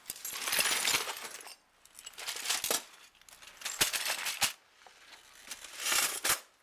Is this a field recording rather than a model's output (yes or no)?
yes